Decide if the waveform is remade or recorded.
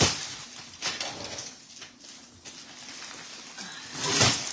recorded